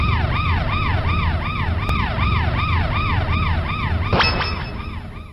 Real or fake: real